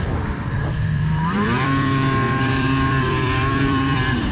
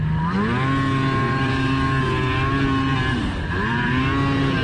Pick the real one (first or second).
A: second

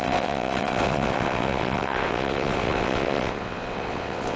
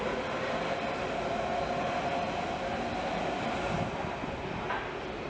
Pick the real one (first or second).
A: second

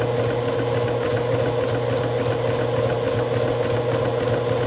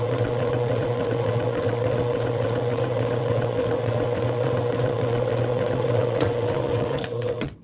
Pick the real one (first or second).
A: first